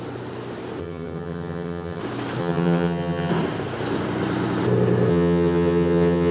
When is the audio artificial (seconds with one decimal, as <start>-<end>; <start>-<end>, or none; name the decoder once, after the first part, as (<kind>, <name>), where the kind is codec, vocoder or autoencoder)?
0.8-2.0 (vocoder, HiFi-GAN); 2.4-3.3; 5.1-6.3